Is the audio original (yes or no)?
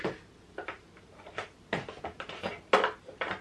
yes